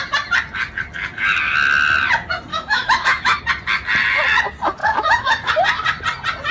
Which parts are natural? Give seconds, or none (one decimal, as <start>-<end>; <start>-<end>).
0.0-2.5; 3.4-4.8; 5.5-6.5